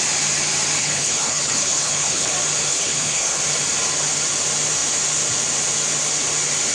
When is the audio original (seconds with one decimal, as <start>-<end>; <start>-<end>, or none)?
0.0-0.8; 2.3-2.7; 3.4-6.7